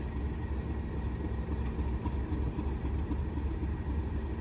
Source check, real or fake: real